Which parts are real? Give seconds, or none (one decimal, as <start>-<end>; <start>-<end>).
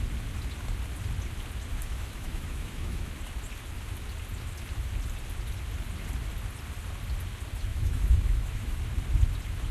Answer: 0.0-1.7; 3.1-7.7; 8.8-9.7